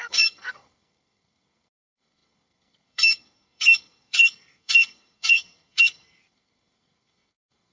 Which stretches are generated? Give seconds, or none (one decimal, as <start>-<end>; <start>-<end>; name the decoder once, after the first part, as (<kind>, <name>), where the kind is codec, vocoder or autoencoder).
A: 0.0-7.7 (codec, SNAC)